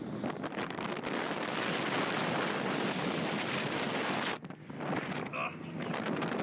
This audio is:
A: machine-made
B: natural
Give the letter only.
B